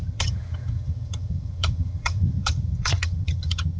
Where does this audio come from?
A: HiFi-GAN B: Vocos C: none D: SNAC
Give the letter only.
A